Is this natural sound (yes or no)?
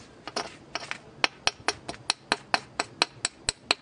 yes